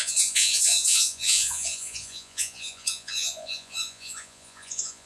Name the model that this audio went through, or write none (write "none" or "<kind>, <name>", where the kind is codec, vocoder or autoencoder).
vocoder, Vocos